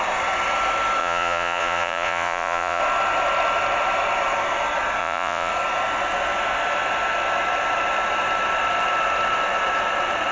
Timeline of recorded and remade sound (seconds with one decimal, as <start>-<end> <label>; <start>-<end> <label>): 0.0-1.0 recorded; 1.0-2.8 remade; 2.8-5.0 recorded; 5.0-5.5 remade; 5.5-10.3 recorded